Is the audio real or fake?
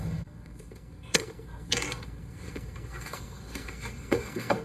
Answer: fake